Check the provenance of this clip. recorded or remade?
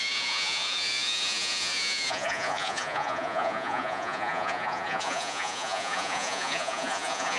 remade